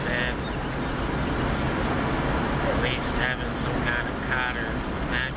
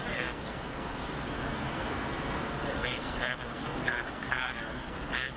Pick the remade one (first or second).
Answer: second